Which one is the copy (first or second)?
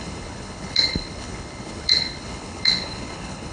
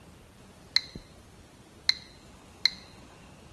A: first